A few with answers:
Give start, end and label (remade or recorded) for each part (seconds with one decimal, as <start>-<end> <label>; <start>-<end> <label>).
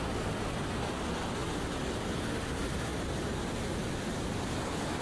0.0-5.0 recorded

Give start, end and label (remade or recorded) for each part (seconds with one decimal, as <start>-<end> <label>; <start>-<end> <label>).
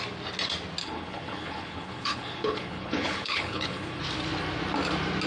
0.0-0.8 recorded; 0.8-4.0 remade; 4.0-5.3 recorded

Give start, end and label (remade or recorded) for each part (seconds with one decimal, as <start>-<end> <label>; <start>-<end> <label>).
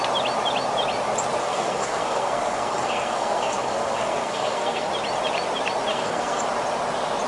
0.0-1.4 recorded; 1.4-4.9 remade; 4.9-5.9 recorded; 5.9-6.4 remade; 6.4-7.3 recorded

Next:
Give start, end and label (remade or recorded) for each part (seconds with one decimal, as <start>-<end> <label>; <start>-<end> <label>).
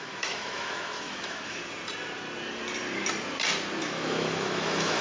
0.0-1.6 remade; 1.6-3.8 recorded; 3.8-5.0 remade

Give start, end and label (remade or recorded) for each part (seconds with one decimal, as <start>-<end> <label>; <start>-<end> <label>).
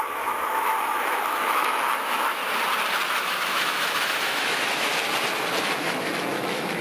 0.0-2.4 remade; 2.4-3.1 recorded; 3.1-4.9 remade; 4.9-5.6 recorded; 5.6-6.8 remade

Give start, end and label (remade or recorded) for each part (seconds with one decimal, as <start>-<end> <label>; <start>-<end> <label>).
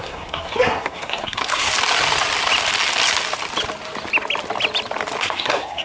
0.0-1.7 remade; 1.7-5.2 recorded; 5.2-5.8 remade